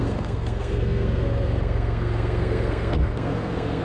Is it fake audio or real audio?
fake